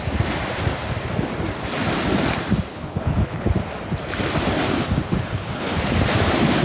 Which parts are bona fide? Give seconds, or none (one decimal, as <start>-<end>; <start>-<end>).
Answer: 0.0-2.7; 3.5-5.0; 5.8-6.6